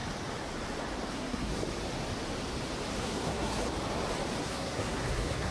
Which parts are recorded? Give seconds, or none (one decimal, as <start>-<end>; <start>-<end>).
0.0-1.1; 1.5-3.0; 3.6-4.4